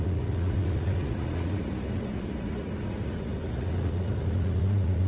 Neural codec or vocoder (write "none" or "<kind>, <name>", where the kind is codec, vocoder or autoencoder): vocoder, Vocos